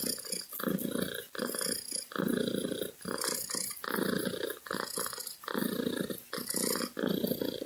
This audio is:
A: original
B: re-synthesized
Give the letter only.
A